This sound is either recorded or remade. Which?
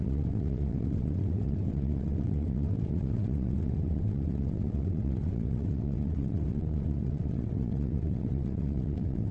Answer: remade